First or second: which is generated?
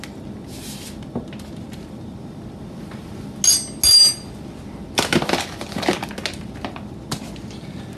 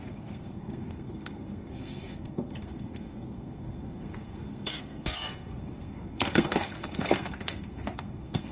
second